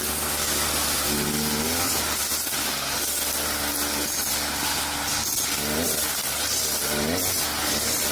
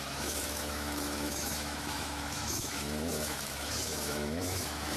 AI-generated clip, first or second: second